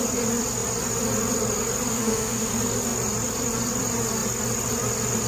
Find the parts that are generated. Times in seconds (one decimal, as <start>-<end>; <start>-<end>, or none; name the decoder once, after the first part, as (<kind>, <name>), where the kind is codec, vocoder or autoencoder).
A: 1.9-2.5 (autoencoder, DAC-VAE)